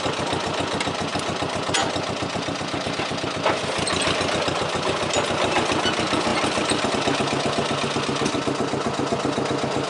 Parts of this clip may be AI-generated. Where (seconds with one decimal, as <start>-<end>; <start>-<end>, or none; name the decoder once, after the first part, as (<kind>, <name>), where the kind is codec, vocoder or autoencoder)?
none